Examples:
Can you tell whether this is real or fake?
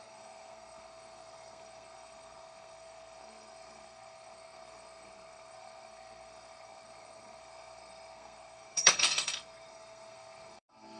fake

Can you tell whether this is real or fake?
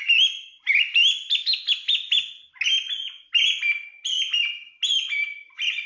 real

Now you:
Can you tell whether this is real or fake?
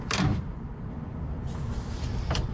fake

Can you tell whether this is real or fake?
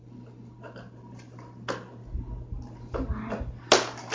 real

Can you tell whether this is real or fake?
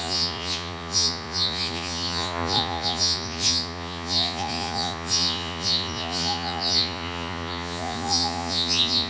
fake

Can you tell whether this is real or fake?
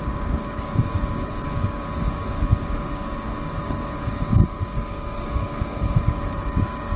fake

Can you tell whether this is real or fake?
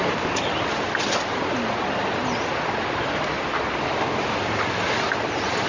real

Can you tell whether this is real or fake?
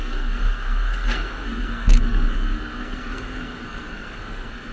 fake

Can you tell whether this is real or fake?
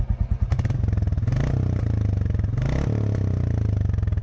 real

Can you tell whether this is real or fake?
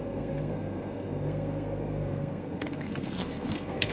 fake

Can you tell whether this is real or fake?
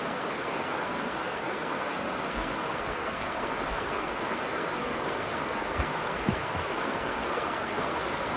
fake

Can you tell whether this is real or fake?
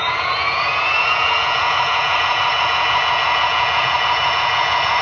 fake